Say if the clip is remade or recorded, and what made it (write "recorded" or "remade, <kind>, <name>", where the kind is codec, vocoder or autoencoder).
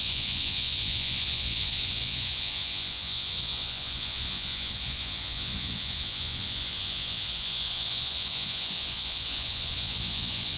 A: remade, vocoder, Vocos